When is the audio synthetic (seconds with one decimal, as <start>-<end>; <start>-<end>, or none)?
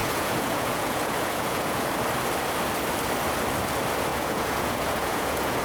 0.0-1.9; 4.1-5.6